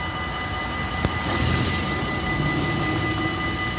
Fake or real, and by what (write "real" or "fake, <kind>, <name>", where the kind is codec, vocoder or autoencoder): real